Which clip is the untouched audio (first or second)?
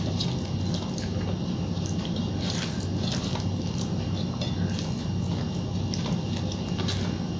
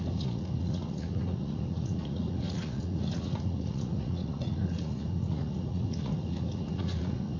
first